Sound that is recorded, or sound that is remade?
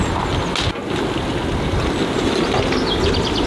recorded